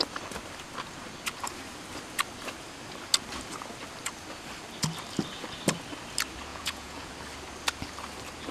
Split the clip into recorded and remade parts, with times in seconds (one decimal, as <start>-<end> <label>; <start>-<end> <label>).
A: 0.0-6.5 recorded; 6.5-7.1 remade; 7.1-8.5 recorded